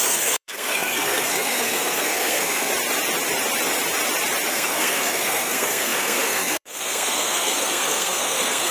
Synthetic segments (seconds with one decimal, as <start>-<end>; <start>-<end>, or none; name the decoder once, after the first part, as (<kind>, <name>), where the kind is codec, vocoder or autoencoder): 0.0-2.7 (codec, SNAC); 4.5-8.7